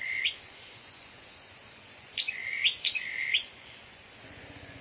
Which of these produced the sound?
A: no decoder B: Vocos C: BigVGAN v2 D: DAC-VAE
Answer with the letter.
B